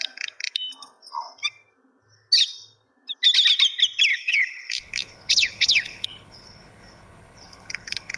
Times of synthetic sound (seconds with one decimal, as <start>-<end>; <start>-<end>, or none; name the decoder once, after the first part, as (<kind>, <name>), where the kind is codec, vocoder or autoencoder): 4.1-8.2 (codec, HILCodec)